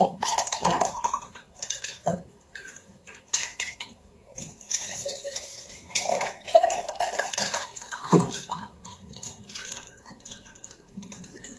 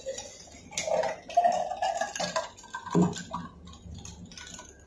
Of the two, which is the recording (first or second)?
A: second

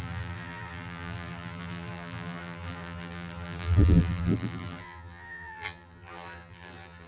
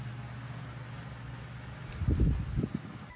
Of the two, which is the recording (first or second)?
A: second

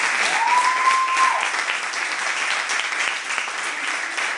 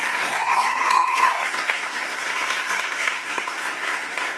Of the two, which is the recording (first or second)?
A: first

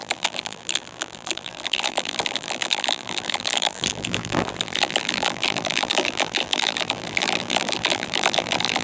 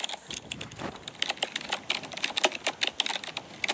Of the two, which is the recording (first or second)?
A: second